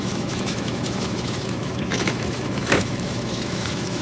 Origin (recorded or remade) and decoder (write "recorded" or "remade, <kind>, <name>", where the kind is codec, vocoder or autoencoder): remade, autoencoder, DAC-VAE